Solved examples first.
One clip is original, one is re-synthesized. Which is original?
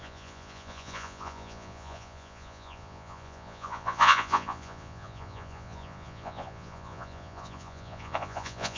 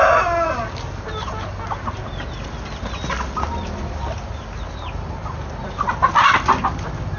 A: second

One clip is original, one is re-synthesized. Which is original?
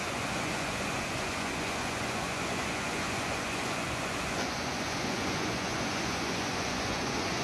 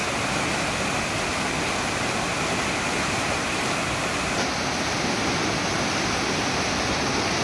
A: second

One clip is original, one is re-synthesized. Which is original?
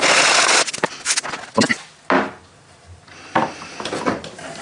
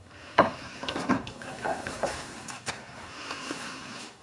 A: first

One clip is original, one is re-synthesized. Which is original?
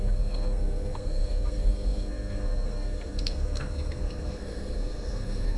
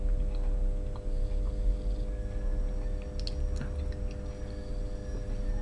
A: second